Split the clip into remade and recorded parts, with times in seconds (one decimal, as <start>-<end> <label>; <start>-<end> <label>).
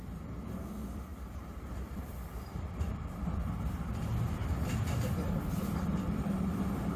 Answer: 0.0-4.4 remade; 4.4-5.5 recorded; 5.5-7.0 remade